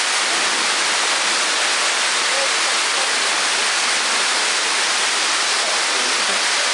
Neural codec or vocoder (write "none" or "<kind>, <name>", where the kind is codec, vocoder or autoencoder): none